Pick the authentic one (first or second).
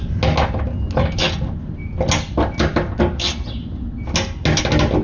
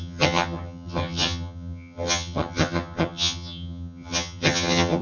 first